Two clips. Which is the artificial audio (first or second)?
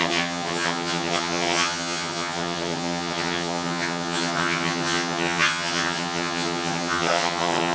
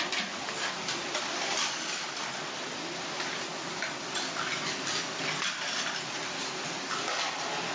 first